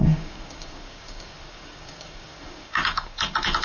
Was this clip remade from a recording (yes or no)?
yes